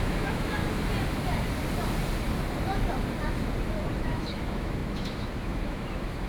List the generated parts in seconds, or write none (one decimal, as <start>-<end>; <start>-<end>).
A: 0.0-0.6; 4.0-6.3